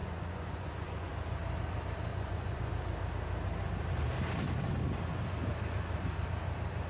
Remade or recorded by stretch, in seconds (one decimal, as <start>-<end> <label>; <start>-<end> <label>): 0.0-1.1 remade; 1.1-2.1 recorded; 2.1-2.7 remade; 2.7-6.9 recorded